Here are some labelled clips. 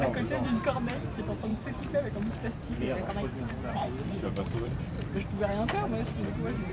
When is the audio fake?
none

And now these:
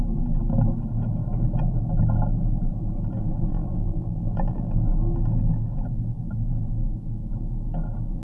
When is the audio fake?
3.5-4.8 (vocoder, BigVGAN v2)